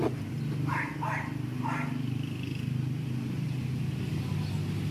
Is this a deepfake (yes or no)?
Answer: no